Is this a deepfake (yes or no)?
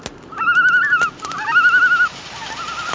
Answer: no